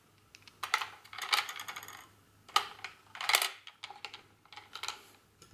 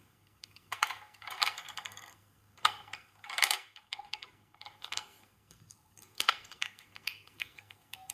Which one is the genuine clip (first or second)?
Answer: first